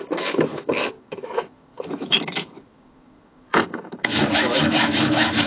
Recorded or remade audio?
remade